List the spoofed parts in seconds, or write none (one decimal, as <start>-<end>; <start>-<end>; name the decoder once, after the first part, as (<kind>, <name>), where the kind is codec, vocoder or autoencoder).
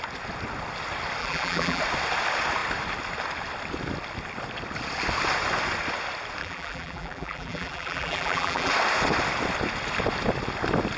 1.2-1.8 (vocoder, BigVGAN v2); 6.4-8.7